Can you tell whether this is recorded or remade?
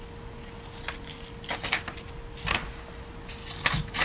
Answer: recorded